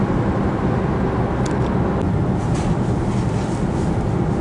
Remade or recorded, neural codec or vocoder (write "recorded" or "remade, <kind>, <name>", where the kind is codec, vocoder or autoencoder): recorded